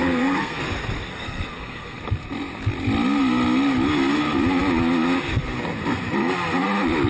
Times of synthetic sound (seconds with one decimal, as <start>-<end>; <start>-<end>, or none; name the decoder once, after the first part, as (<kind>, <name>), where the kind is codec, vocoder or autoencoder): 0.0-0.6 (codec, SNAC); 1.1-2.0